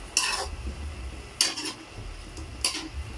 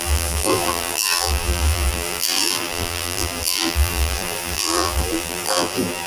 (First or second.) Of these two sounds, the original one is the first